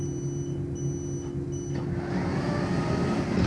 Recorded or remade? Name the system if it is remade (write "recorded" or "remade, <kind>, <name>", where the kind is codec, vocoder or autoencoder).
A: recorded